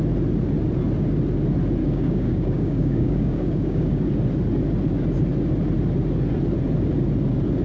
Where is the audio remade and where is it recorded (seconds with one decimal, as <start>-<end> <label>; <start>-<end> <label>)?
0.0-1.8 recorded; 1.8-4.1 remade; 4.1-7.6 recorded